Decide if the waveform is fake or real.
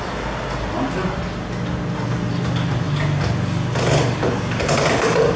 real